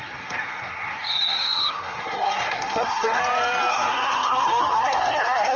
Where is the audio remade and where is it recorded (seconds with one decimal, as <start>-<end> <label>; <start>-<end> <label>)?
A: 0.0-3.2 remade; 3.2-3.7 recorded; 3.7-5.6 remade